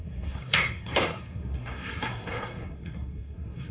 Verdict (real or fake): fake